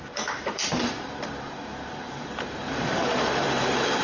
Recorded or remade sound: remade